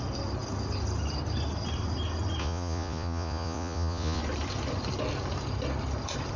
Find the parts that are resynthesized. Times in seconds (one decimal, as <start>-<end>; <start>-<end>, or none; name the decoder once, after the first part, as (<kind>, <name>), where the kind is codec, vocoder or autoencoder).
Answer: 2.4-4.2 (vocoder, Vocos)